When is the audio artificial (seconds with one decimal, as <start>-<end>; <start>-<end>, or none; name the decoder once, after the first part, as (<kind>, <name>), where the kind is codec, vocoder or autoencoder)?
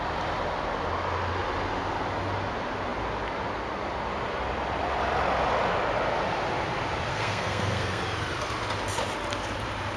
7.1-8.0 (codec, SNAC)